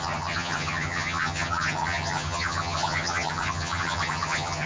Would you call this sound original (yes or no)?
no